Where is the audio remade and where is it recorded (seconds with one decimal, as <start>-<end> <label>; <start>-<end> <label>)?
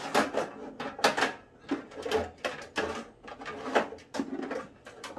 0.0-5.2 recorded